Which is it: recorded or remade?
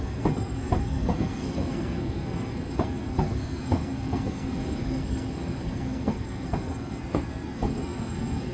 remade